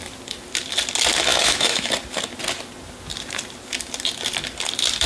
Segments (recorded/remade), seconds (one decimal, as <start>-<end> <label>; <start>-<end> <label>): 0.0-1.3 recorded; 1.3-1.9 remade; 1.9-5.1 recorded